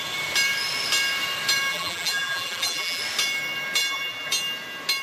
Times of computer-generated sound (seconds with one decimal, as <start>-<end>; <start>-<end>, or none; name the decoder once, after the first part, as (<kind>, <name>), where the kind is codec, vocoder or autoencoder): 1.7-3.0 (vocoder, BigVGAN v2); 3.8-4.3